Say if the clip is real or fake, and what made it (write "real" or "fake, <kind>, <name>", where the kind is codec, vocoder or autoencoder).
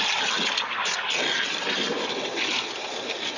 real